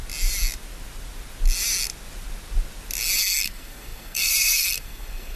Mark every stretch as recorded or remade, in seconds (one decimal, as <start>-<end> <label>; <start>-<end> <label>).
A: 0.0-3.2 recorded; 3.2-5.4 remade